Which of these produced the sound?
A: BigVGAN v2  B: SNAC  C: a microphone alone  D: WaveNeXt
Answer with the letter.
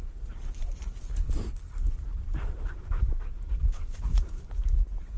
C